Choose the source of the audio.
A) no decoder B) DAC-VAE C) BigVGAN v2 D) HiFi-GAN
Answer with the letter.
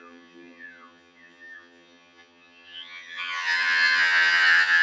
D